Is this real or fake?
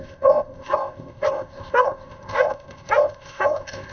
fake